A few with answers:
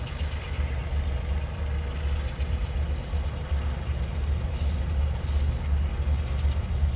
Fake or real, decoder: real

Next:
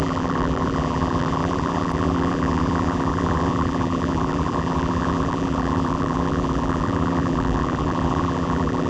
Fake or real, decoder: fake, vocoder, BigVGAN v2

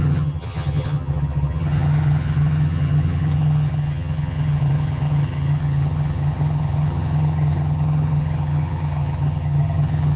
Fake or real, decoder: fake, vocoder, HiFi-GAN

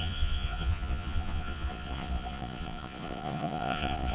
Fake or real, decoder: fake, vocoder, Vocos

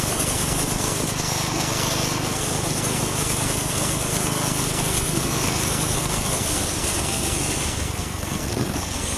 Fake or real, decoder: fake, codec, SNAC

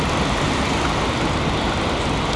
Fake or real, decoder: real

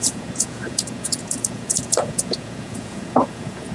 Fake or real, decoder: fake, vocoder, Vocos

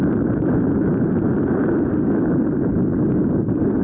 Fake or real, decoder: real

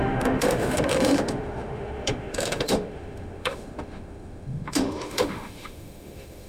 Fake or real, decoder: fake, autoencoder, DAC-VAE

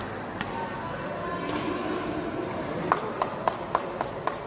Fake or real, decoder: real